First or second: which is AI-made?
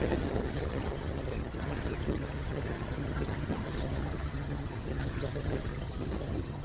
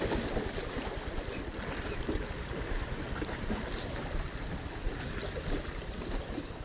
first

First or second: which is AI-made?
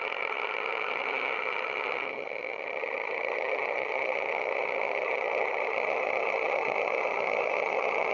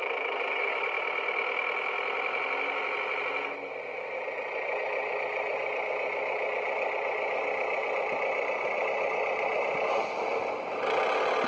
first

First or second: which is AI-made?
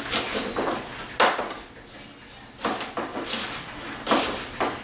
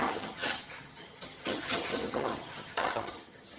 second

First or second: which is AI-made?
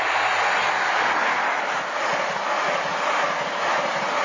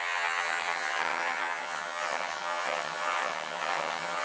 second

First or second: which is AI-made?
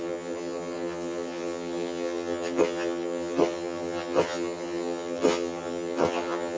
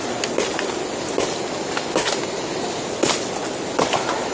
first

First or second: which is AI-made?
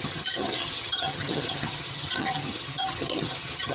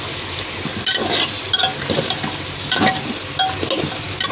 first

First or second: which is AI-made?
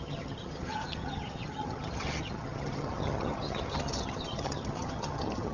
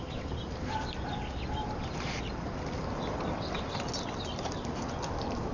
first